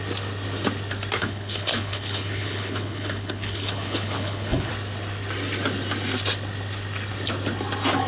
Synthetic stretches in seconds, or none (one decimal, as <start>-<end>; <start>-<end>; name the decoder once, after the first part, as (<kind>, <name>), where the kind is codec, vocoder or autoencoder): 1.2-4.7 (codec, HILCodec)